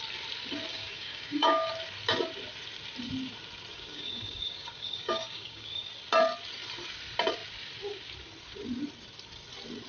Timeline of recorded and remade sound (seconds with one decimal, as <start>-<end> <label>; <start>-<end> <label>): 0.0-0.7 recorded; 0.7-1.7 remade; 1.7-3.7 recorded; 3.7-5.9 remade; 5.9-9.9 recorded